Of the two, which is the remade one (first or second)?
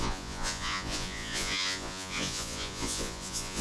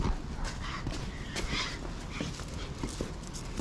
first